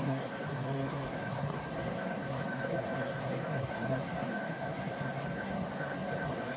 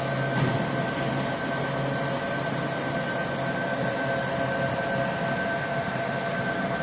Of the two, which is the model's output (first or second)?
first